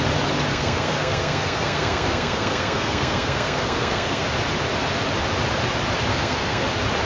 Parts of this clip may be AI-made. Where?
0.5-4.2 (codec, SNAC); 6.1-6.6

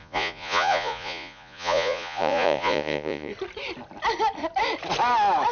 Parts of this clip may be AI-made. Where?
0.0-3.3 (vocoder, Vocos)

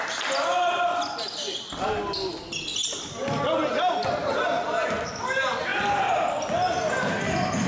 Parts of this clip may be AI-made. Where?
4.2-5.0 (vocoder, BigVGAN v2)